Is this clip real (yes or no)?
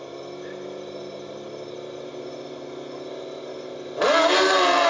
yes